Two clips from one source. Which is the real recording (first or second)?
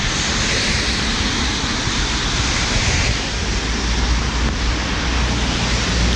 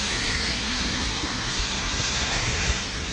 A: first